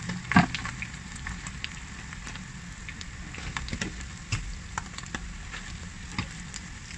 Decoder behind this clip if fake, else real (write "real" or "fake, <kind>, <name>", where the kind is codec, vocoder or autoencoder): real